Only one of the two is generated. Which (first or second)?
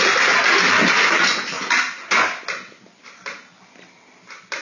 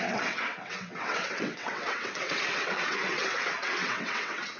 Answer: second